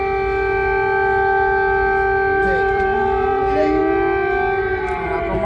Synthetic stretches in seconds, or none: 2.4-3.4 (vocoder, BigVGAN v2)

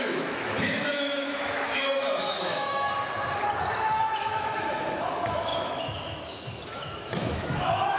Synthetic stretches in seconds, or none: 0.0-2.9 (autoencoder, DAC-VAE); 4.0-8.0

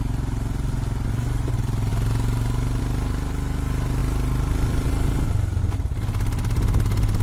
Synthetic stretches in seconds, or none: none

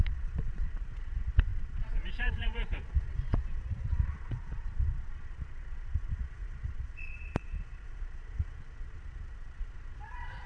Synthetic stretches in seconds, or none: 0.0-10.5 (vocoder, Vocos)

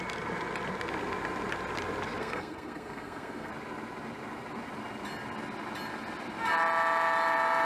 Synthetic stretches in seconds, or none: 2.2-3.5 (codec, SNAC)

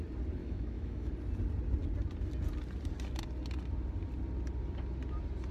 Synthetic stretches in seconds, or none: 0.4-1.1 (autoencoder, DAC-VAE)

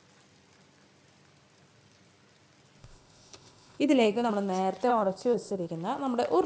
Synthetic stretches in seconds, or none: 2.8-4.3 (codec, ZipCodec); 4.9-5.7